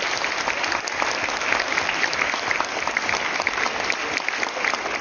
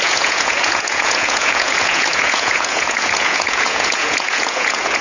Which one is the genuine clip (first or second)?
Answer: first